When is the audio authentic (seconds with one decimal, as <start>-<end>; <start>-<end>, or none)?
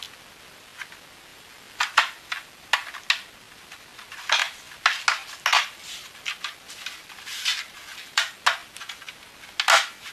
0.0-1.3; 2.7-5.5; 6.3-7.8; 8.4-10.1